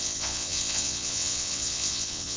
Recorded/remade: remade